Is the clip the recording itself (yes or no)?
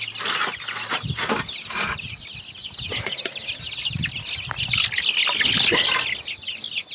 yes